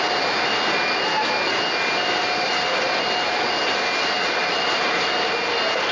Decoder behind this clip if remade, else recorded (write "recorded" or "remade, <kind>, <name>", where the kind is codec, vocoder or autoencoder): recorded